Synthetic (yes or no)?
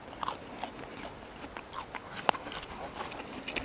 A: no